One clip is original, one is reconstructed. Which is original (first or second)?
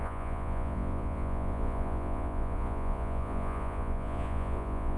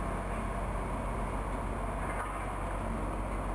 second